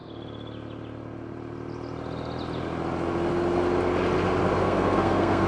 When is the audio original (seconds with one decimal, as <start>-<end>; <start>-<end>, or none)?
0.0-4.6